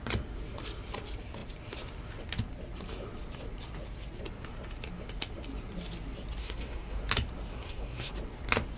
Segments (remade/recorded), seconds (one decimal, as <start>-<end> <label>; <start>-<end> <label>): 0.0-6.4 recorded; 6.4-7.0 remade; 7.0-7.5 recorded; 7.5-8.1 remade; 8.1-8.8 recorded